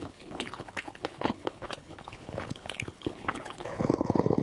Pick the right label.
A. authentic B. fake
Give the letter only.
B